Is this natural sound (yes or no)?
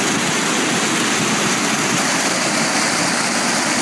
yes